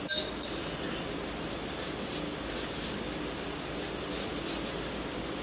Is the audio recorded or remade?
recorded